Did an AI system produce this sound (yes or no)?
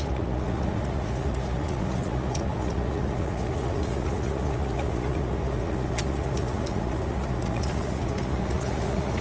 yes